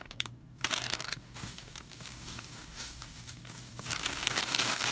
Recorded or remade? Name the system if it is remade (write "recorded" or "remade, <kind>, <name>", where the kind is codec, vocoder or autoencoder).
remade, codec, DAC